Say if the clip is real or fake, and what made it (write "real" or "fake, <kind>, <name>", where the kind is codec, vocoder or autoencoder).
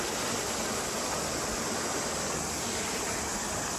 real